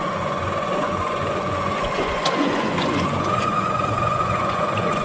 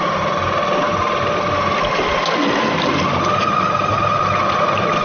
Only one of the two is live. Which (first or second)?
second